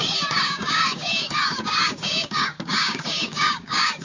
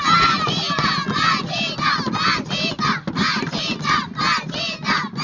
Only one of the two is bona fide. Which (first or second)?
second